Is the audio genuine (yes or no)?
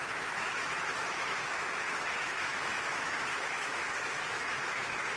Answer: no